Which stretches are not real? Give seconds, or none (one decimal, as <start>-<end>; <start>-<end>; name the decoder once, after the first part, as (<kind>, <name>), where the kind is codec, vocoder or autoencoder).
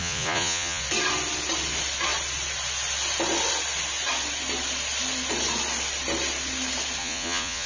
0.0-0.8 (vocoder, Vocos); 7.0-7.7